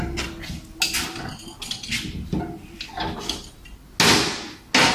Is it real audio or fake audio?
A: real